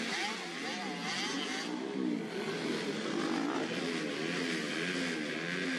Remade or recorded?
recorded